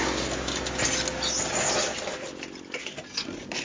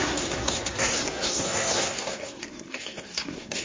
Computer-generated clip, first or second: second